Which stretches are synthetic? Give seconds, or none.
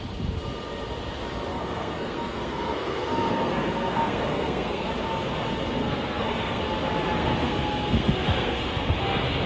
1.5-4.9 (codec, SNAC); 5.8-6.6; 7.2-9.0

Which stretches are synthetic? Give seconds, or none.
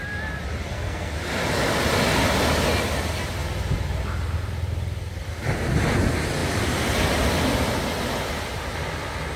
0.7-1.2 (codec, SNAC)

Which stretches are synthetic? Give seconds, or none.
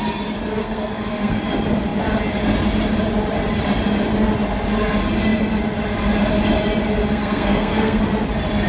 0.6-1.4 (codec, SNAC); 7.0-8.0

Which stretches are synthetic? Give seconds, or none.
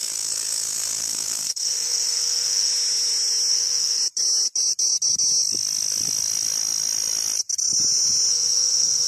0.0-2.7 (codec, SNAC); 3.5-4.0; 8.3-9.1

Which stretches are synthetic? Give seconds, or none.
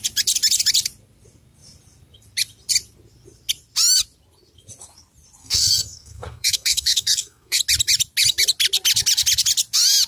5.4-7.6 (codec, SNAC)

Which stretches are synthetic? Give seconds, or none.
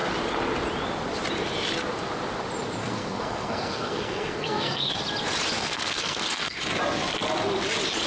2.8-5.0 (codec, SNAC); 5.6-6.6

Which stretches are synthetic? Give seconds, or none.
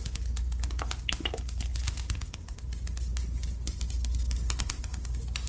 none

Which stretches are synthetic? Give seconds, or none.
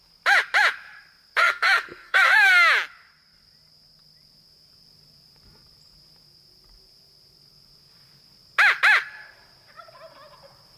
1.4-2.5 (codec, SNAC)